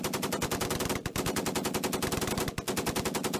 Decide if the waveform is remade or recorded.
recorded